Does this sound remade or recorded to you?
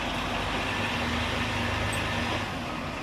recorded